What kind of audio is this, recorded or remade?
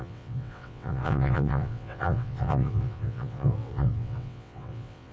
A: remade